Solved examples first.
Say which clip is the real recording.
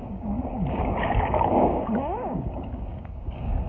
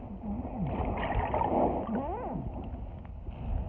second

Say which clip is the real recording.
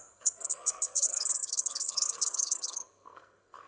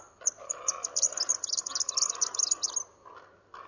second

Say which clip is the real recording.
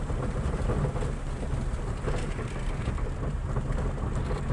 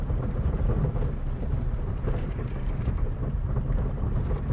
first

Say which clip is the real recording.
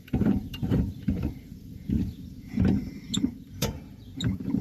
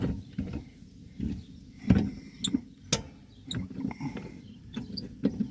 second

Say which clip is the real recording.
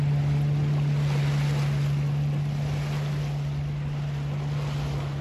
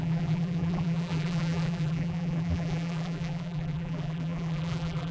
first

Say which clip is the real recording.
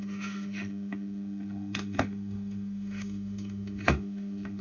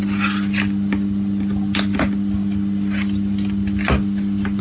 second